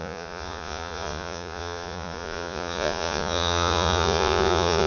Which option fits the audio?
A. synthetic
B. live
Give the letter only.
A